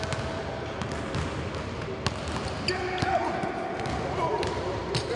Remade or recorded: recorded